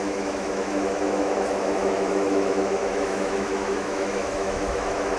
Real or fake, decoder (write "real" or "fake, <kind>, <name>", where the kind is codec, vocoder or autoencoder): fake, autoencoder, DAC-VAE